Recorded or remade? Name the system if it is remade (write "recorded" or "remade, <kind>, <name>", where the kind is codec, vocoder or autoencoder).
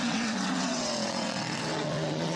remade, vocoder, WaveNeXt